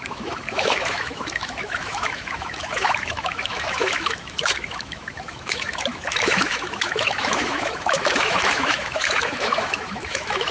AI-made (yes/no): yes